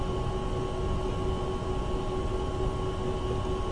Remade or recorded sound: recorded